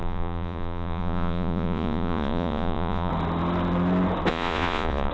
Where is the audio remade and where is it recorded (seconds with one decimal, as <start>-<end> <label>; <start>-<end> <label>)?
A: 0.0-3.1 remade; 3.1-4.3 recorded; 4.3-5.1 remade

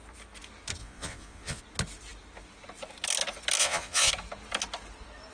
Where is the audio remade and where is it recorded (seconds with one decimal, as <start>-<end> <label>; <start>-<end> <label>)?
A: 0.0-0.8 recorded; 0.8-1.6 remade; 1.6-3.6 recorded; 3.6-4.1 remade; 4.1-5.3 recorded

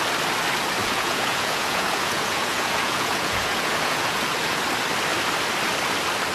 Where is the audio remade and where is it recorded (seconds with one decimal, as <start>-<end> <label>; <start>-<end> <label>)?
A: 0.0-0.8 recorded; 0.8-4.6 remade; 4.6-6.3 recorded